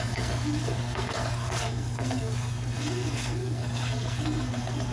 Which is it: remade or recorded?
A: remade